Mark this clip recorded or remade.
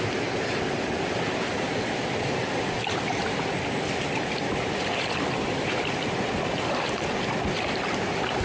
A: recorded